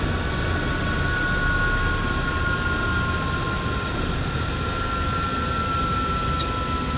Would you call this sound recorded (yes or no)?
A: yes